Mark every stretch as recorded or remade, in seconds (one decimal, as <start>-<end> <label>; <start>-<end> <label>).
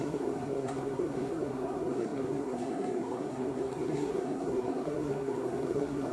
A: 0.0-6.1 remade